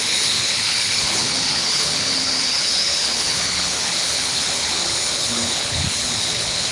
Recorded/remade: remade